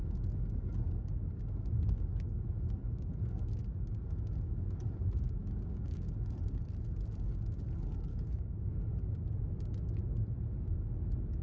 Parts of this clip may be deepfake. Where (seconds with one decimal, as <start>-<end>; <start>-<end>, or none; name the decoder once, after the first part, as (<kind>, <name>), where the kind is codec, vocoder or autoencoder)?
5.4-6.1 (codec, DAC); 8.1-8.6